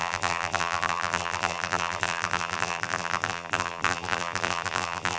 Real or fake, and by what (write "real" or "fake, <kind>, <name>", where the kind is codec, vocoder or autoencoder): fake, vocoder, BigVGAN v2